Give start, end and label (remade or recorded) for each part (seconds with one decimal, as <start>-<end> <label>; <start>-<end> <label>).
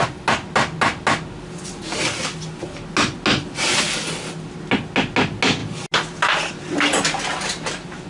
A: 0.0-8.1 recorded